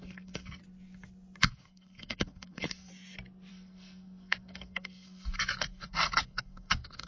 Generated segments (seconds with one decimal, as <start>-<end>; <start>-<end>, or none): 0.0-0.6; 1.4-2.9; 3.5-7.1